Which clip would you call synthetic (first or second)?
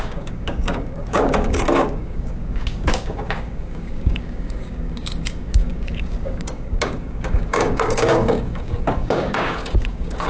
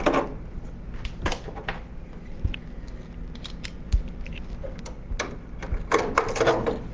first